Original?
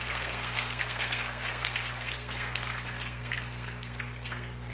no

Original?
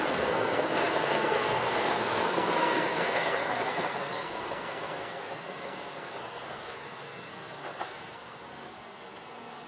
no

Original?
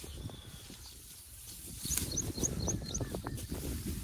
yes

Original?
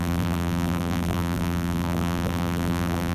no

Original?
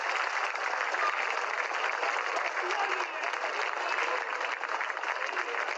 yes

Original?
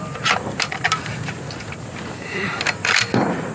yes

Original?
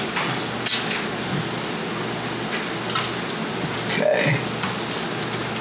yes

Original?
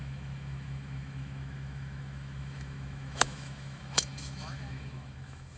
no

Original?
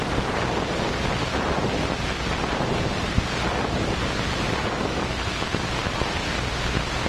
yes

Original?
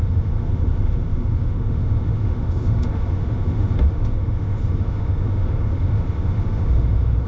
no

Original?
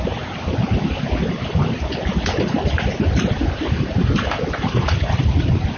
no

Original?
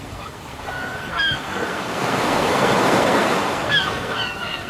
no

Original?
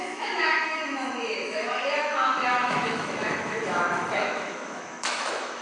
no